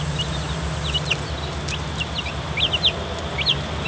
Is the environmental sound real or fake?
real